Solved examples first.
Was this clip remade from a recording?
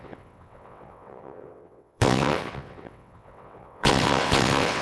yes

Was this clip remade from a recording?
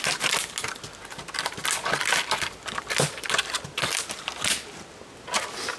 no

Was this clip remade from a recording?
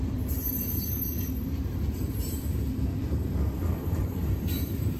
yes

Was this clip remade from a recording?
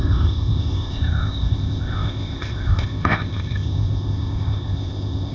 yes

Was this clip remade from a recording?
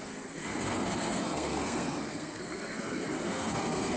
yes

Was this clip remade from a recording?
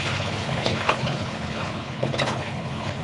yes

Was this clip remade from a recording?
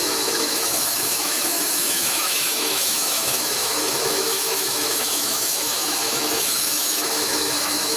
yes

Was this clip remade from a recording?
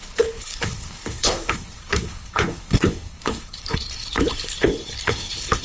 yes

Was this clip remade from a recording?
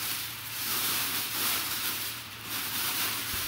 yes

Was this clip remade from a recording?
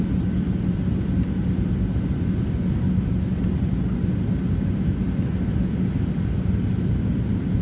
no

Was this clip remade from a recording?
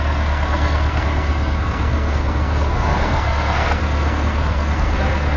yes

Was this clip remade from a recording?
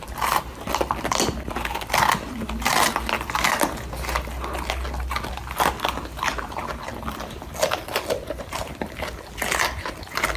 no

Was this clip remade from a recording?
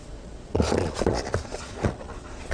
yes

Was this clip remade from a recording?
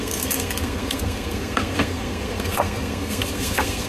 yes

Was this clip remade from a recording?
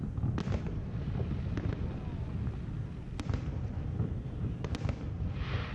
no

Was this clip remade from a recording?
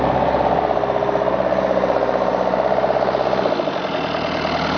no